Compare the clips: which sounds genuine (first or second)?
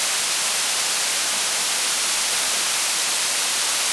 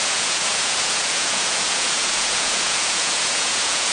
first